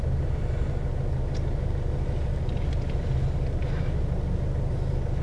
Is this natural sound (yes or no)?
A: yes